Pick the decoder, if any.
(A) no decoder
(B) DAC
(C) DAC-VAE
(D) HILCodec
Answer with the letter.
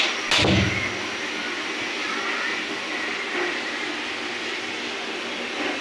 A